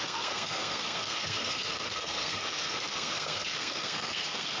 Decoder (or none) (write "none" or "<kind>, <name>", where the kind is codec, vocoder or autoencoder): codec, SNAC